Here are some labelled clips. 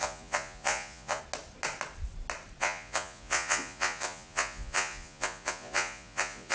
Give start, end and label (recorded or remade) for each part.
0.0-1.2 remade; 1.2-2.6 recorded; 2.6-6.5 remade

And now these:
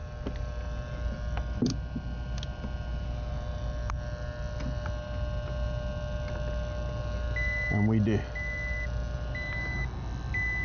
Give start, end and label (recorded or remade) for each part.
0.0-10.6 recorded

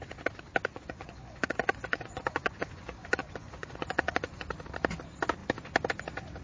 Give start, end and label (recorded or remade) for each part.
0.0-0.7 recorded; 0.7-4.5 remade; 4.5-6.4 recorded

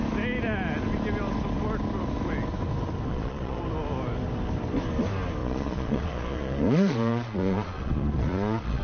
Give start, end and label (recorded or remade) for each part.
0.0-3.1 recorded; 3.1-3.6 remade; 3.6-5.4 recorded; 5.4-8.8 remade

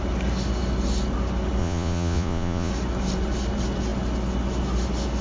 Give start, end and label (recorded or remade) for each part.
0.0-1.6 recorded; 1.6-2.7 remade; 2.7-5.2 recorded

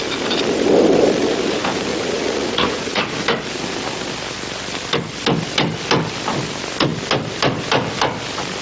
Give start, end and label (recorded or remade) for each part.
0.0-1.9 recorded; 1.9-3.0 remade; 3.0-8.6 recorded